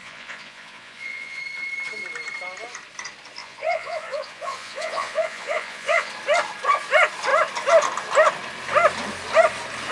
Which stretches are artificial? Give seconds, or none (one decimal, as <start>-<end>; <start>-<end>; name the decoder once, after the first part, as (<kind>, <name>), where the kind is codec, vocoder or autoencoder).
0.0-1.4 (vocoder, Vocos); 3.4-6.1